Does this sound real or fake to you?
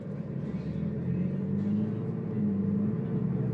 real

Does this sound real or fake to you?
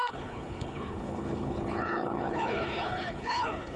fake